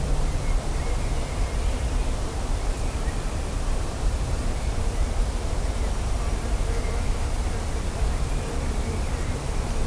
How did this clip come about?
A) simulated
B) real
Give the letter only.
A